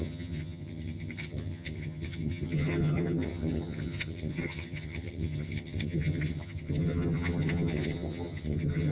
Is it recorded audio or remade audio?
remade